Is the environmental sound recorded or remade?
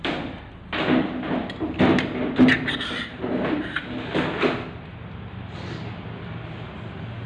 recorded